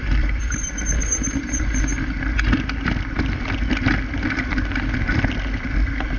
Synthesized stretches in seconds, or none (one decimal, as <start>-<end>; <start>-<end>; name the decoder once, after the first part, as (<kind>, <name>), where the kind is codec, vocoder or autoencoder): 0.0-1.9 (vocoder, BigVGAN v2); 5.6-6.2

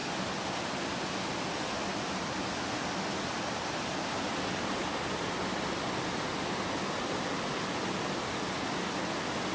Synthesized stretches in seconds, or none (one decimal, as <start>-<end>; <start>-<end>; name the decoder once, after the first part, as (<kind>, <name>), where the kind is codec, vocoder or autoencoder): none